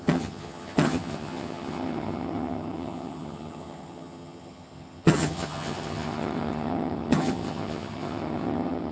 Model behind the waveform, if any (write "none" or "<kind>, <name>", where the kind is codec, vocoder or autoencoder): vocoder, HiFi-GAN